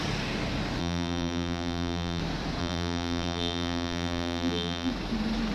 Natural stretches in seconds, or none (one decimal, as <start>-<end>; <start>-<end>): 0.0-0.8; 2.2-2.6; 4.9-5.5